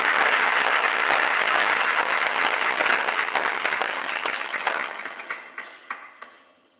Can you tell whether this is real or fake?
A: fake